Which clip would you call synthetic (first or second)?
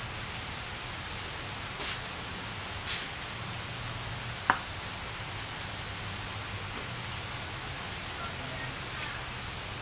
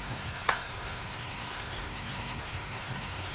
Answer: second